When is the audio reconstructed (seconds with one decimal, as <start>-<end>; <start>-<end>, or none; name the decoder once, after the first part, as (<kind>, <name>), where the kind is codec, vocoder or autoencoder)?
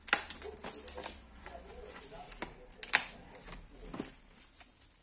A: 1.2-2.0 (vocoder, Vocos)